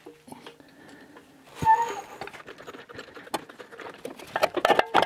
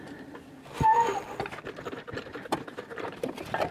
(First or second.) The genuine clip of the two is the first